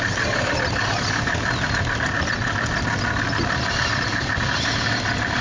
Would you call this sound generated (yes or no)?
no